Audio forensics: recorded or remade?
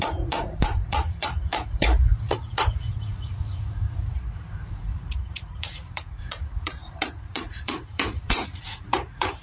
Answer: remade